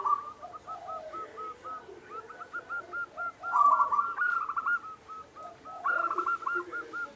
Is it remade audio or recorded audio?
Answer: recorded